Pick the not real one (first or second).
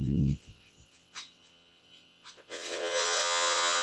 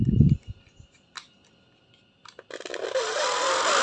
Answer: first